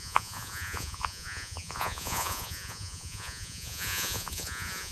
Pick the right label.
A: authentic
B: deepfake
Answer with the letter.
B